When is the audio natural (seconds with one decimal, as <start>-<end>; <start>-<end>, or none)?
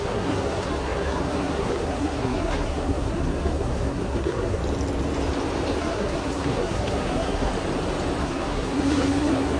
4.6-5.8; 7.5-8.2